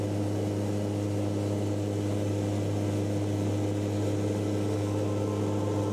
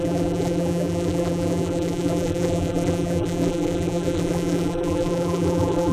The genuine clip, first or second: first